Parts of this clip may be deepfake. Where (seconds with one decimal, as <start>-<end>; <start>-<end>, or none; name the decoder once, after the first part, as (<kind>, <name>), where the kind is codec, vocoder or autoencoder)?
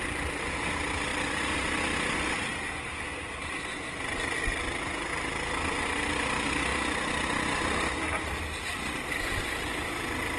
none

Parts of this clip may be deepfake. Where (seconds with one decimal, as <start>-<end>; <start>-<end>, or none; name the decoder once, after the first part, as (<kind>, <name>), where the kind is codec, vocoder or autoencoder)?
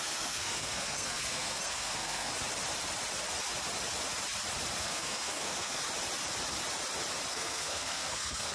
0.0-2.3 (codec, SNAC); 4.8-5.8; 7.3-8.5